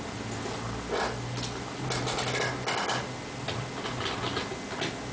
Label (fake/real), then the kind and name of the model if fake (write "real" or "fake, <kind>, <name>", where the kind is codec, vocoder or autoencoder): real